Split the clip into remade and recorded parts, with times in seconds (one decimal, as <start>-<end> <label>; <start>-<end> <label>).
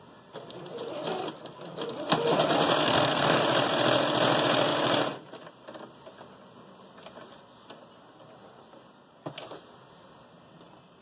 0.0-2.8 recorded; 2.8-3.4 remade; 3.4-11.0 recorded